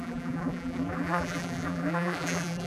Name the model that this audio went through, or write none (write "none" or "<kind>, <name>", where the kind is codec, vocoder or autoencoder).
vocoder, BigVGAN v2